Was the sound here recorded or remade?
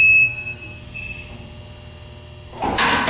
recorded